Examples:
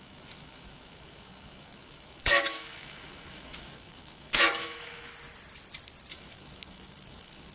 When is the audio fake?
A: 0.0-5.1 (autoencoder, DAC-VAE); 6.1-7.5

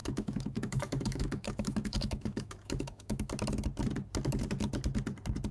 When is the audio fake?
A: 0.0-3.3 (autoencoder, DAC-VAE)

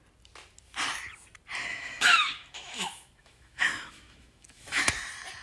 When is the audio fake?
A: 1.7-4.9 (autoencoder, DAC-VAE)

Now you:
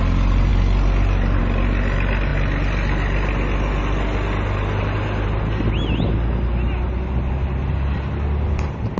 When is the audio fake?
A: none

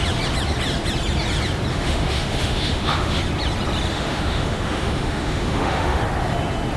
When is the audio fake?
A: 1.7-3.2 (autoencoder, DAC-VAE); 3.9-6.0

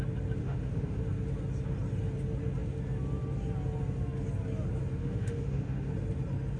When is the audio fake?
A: 0.4-1.0 (autoencoder, DAC-VAE); 5.0-5.9